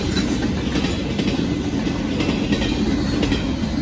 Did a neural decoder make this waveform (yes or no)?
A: no